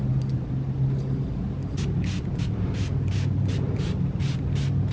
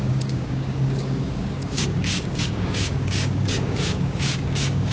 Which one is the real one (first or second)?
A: first